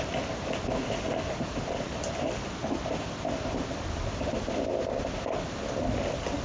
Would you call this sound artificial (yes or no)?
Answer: no